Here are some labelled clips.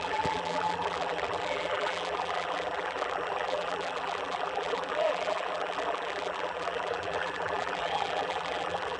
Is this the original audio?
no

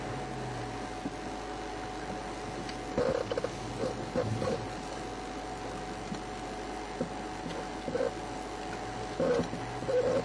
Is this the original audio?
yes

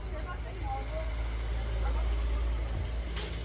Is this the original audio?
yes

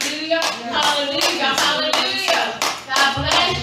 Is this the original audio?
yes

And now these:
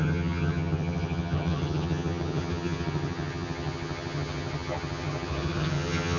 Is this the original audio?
no